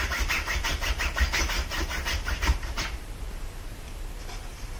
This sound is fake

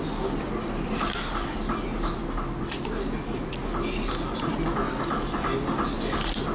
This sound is real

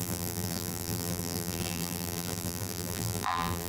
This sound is fake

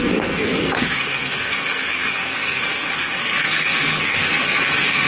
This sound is fake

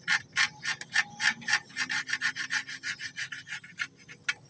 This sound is real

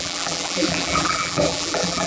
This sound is fake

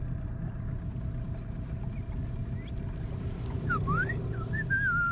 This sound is real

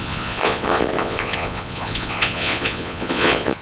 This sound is fake